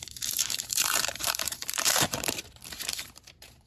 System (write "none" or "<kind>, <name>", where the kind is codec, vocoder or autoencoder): vocoder, BigVGAN v2